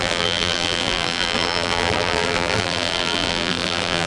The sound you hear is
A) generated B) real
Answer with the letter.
A